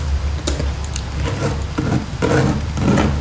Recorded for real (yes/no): yes